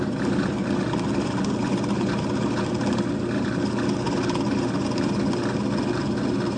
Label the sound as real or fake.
real